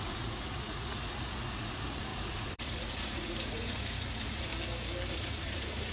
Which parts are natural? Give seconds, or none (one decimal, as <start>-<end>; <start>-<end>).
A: 4.5-5.1